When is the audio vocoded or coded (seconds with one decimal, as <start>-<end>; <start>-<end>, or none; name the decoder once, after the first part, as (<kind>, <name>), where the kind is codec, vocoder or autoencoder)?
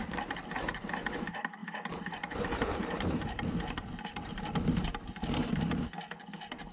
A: 1.6-5.6 (vocoder, BigVGAN v2)